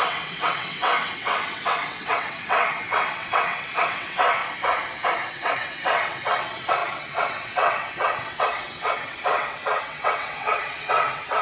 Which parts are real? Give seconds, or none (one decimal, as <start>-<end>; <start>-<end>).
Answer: 4.4-5.3